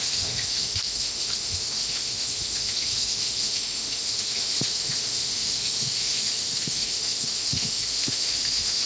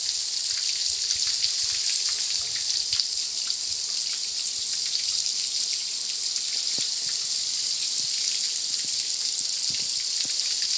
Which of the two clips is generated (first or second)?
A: first